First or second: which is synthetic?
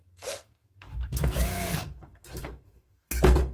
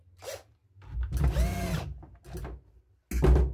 first